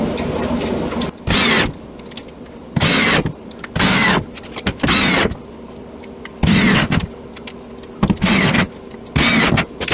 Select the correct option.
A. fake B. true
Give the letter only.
B